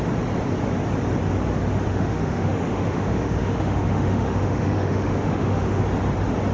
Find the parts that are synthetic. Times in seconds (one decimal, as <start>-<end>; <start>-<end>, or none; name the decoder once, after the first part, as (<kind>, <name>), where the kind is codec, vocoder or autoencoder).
1.9-5.8 (autoencoder, DAC-VAE)